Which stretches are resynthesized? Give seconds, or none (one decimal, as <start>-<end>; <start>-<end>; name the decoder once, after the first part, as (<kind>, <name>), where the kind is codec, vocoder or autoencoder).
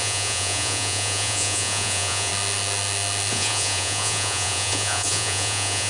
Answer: 0.0-2.3 (vocoder, Vocos); 3.3-5.9